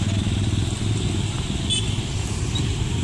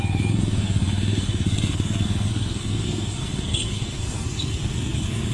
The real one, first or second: first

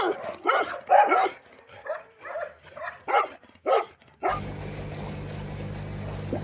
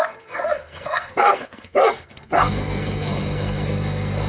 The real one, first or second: first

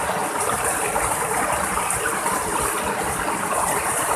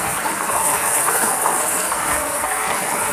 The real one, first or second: first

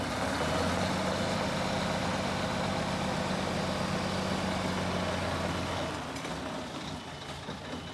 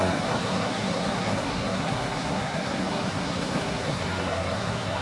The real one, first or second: first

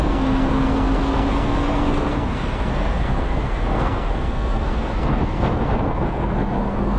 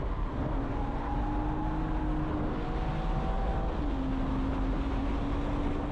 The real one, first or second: second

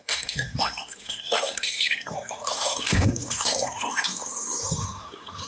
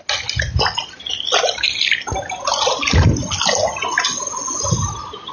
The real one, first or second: second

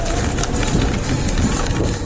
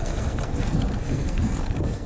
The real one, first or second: first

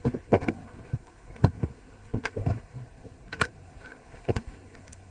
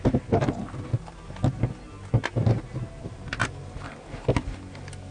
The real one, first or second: second